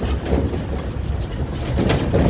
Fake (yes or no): no